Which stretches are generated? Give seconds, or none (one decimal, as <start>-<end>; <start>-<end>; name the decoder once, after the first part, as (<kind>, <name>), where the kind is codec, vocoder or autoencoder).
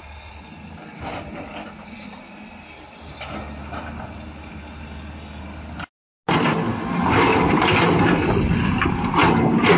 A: 6.7-8.4 (vocoder, BigVGAN v2)